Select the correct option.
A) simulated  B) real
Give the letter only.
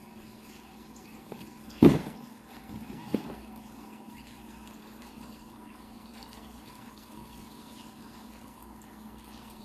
A